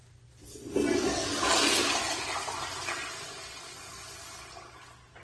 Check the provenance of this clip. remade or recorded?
recorded